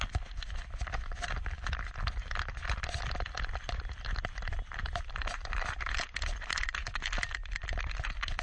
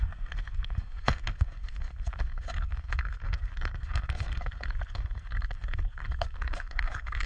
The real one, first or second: first